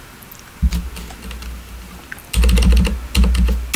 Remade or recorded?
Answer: recorded